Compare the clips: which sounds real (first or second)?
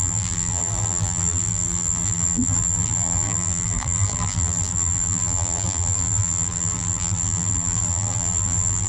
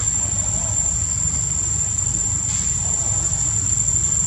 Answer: second